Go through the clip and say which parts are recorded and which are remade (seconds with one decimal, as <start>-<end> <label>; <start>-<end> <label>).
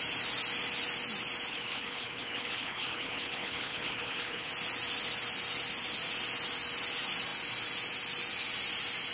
0.0-1.5 recorded; 1.5-4.5 remade; 4.5-9.1 recorded